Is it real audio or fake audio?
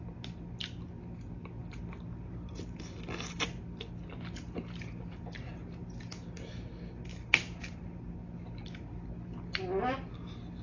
real